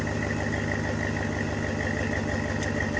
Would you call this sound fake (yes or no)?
no